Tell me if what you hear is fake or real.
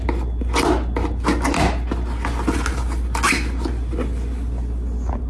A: real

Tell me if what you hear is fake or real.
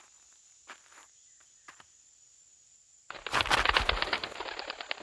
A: real